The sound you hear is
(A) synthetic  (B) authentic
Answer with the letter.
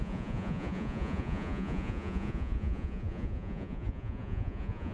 A